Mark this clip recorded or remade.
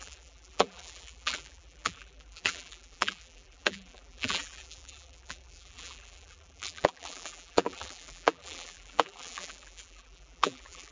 remade